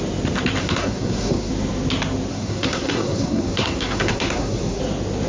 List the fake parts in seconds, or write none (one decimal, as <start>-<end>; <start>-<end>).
0.6-1.5; 2.3-4.8